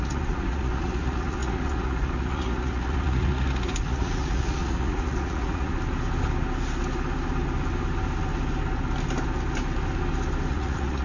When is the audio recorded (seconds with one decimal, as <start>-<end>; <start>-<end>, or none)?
5.7-10.5